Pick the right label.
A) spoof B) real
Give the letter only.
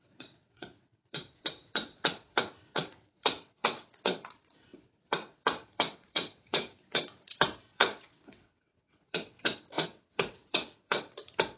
A